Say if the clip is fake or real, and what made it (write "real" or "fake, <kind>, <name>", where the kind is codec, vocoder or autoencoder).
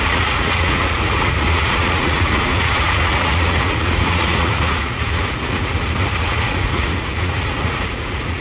fake, vocoder, Vocos